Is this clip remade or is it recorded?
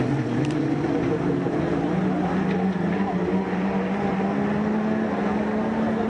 recorded